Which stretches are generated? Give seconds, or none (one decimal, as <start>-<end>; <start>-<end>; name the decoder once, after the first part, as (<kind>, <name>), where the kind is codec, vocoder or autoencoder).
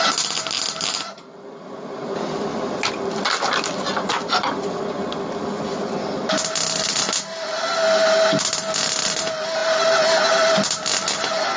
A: none